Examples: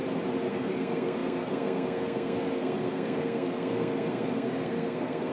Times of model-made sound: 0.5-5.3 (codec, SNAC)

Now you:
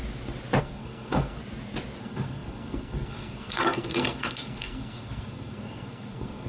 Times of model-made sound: 0.6-1.4 (codec, SNAC); 2.0-6.5

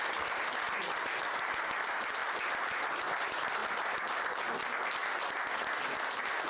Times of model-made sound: none

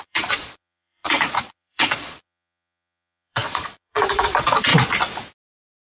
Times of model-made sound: 0.0-4.7 (vocoder, Vocos)